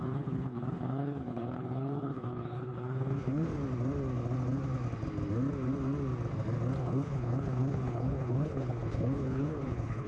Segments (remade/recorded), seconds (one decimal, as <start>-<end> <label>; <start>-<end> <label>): 0.0-3.5 remade; 3.5-6.8 recorded; 6.8-10.1 remade